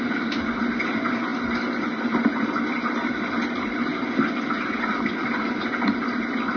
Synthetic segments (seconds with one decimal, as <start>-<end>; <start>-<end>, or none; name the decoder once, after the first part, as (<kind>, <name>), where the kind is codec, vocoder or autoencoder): 0.0-3.9 (vocoder, BigVGAN v2); 4.9-6.6